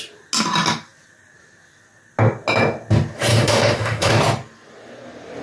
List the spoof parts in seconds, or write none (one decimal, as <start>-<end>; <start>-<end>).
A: 3.3-4.1